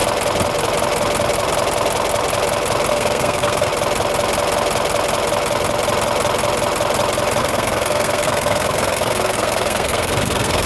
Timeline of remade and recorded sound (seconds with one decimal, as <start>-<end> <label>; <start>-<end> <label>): 0.0-2.9 recorded; 2.9-3.7 remade; 3.7-7.4 recorded; 7.4-10.7 remade

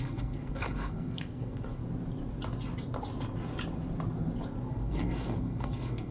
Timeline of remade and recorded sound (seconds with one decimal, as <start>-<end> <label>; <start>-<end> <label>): 0.0-1.8 remade; 1.8-4.7 recorded; 4.7-6.1 remade